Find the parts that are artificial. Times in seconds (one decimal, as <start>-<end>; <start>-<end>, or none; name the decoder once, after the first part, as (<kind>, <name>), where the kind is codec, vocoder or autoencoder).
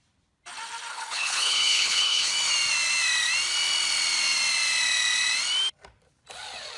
0.9-2.3 (codec, HILCodec)